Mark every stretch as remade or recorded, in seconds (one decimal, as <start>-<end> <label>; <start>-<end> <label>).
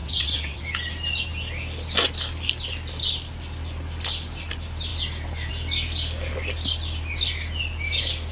0.0-0.6 remade; 0.6-8.3 recorded